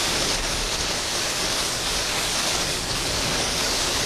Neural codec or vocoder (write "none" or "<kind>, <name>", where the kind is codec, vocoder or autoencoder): codec, DAC